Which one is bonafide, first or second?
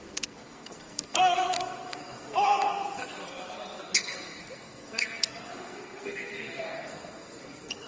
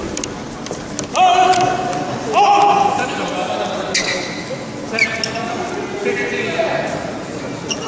second